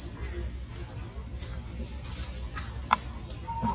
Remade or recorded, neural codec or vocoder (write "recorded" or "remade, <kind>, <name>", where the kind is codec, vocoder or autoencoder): recorded